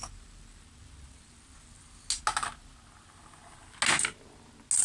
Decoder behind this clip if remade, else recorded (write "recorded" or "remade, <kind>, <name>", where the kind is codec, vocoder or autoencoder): recorded